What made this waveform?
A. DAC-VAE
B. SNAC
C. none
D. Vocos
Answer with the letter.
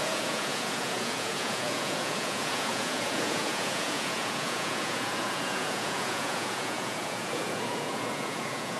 D